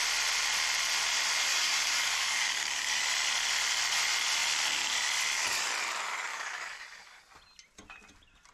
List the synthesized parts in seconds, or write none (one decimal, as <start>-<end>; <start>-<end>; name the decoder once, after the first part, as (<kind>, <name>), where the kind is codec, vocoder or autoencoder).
1.5-3.0 (codec, DAC); 6.3-7.2